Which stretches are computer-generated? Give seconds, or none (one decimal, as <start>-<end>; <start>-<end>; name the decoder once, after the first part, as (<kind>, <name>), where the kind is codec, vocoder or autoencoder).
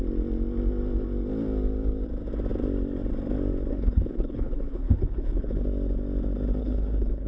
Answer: 3.7-5.6 (codec, HILCodec); 6.6-7.3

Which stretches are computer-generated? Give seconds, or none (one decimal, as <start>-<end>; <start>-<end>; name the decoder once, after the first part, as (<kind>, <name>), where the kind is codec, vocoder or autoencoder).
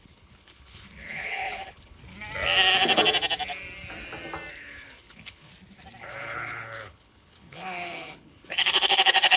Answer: 0.0-2.0 (codec, HILCodec); 4.5-5.5; 6.0-9.4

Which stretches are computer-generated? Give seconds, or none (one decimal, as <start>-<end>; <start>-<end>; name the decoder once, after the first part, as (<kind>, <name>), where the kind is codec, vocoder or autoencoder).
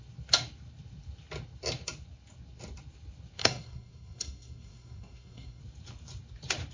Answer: 3.4-5.6 (codec, SNAC)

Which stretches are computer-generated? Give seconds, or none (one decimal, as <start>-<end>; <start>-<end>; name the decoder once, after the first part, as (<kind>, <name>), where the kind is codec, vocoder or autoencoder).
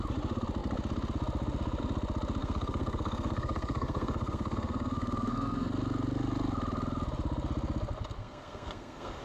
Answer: 2.4-5.7 (codec, SNAC); 8.2-9.2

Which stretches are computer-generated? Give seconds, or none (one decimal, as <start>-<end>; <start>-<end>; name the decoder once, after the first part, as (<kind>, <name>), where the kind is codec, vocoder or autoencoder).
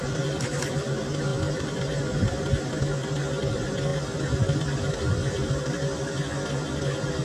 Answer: 0.0-0.9 (vocoder, BigVGAN v2); 1.3-2.8